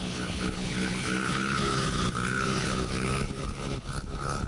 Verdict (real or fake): fake